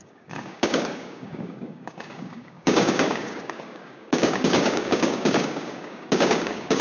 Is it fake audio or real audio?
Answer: fake